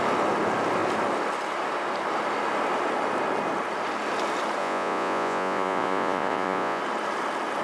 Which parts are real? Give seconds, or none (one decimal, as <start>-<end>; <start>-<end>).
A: 0.0-4.6; 6.8-7.6